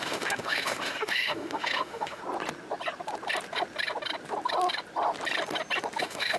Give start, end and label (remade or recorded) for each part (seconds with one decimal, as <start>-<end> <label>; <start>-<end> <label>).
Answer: 0.0-2.2 remade; 2.2-6.0 recorded; 6.0-6.4 remade